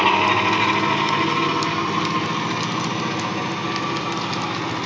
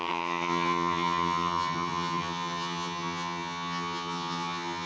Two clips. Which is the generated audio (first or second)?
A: second